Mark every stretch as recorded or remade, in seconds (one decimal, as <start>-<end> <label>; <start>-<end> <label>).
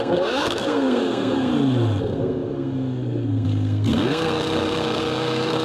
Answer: 0.0-1.5 remade; 1.5-2.0 recorded; 2.0-5.6 remade